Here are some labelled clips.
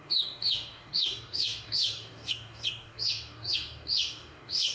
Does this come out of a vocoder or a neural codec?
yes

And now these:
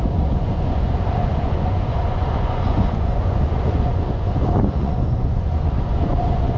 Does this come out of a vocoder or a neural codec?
yes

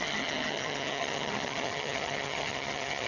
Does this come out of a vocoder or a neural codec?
yes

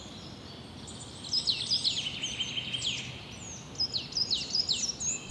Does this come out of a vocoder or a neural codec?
no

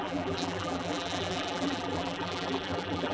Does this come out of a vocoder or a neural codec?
yes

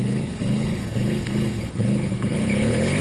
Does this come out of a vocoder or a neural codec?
yes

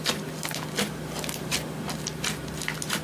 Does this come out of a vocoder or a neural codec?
no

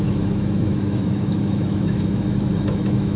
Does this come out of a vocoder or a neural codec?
yes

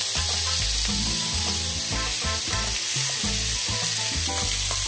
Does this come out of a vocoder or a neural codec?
no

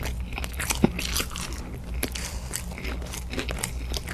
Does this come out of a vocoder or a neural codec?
no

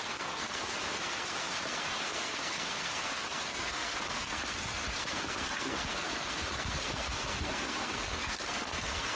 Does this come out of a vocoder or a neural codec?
yes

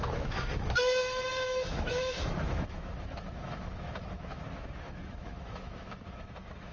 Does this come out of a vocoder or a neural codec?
yes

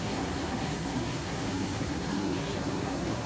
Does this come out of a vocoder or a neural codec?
yes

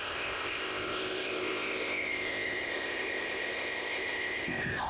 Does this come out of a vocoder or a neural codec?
yes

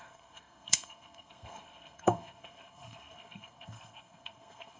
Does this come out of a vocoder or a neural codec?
yes